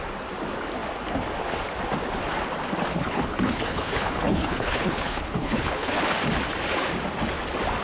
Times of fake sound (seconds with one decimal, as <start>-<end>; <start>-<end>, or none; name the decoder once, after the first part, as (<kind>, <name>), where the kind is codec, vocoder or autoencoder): 2.9-6.0 (codec, HILCodec)